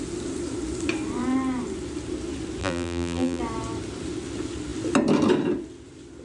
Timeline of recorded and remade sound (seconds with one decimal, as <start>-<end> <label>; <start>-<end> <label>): 0.0-2.6 recorded; 2.6-3.4 remade; 3.4-6.2 recorded